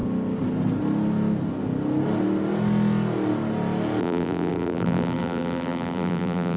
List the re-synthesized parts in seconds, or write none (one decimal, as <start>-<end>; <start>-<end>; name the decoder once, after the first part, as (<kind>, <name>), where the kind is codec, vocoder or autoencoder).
4.0-6.6 (vocoder, BigVGAN v2)